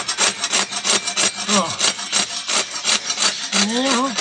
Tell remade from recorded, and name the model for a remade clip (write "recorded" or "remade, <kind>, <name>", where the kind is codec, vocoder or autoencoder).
recorded